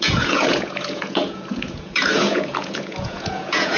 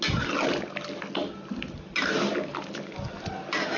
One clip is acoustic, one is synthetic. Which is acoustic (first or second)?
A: second